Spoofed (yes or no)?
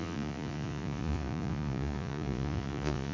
yes